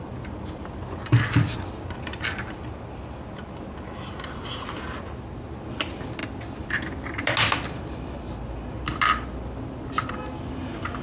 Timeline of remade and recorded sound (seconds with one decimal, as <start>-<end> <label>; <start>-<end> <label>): 0.0-11.0 recorded